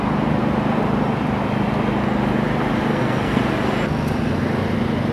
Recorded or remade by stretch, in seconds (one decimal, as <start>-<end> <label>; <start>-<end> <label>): 0.0-2.9 recorded; 2.9-3.4 remade; 3.4-5.1 recorded